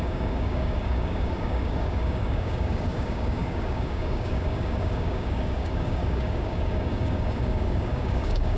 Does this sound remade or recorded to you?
remade